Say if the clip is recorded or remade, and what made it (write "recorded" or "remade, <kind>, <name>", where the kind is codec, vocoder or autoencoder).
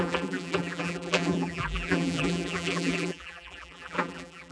remade, vocoder, BigVGAN v2